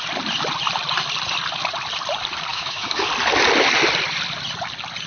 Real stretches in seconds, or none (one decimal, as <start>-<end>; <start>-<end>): 0.0-2.5; 3.1-5.1